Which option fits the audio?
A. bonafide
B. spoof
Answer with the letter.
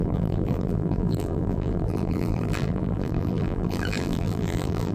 B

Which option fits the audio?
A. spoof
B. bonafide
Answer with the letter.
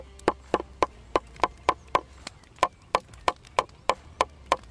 B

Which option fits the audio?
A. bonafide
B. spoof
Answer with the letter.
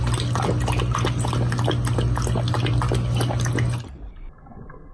A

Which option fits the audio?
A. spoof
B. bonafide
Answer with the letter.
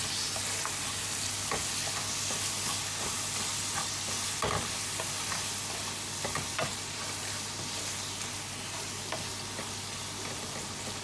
B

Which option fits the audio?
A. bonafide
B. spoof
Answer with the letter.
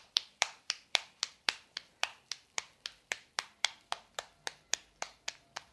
B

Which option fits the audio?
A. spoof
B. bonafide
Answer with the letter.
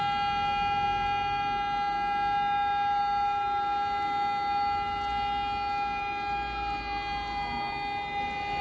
B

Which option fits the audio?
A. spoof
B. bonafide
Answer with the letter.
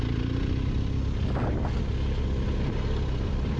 B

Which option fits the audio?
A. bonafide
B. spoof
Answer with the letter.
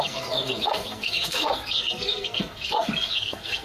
B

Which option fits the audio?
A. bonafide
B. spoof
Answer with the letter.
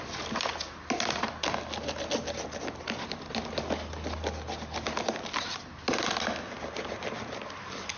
A